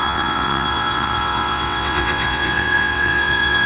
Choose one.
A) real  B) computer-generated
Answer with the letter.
B